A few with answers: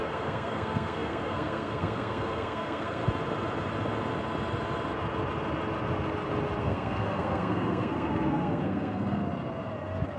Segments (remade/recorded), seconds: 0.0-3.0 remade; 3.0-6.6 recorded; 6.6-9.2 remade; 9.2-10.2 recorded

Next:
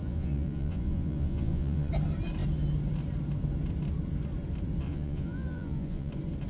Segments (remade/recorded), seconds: 0.0-1.9 remade; 1.9-4.9 recorded; 4.9-6.1 remade; 6.1-6.5 recorded

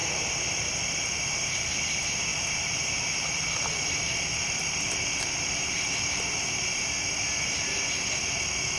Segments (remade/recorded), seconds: 0.0-2.3 recorded; 2.3-6.4 remade; 6.4-8.8 recorded